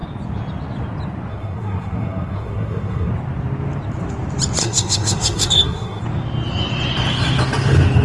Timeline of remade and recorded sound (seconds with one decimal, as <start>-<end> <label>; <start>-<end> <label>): 0.0-1.3 recorded; 1.3-3.1 remade; 3.1-4.6 recorded; 4.6-6.0 remade; 6.0-8.0 recorded